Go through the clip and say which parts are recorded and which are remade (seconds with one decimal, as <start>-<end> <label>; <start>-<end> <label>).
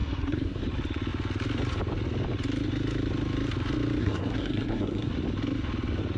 0.0-0.6 remade; 0.6-4.0 recorded; 4.0-5.1 remade; 5.1-6.2 recorded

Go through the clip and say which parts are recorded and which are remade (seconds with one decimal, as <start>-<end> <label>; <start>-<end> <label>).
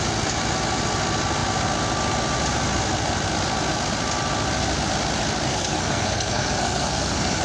0.0-5.5 recorded; 5.5-7.4 remade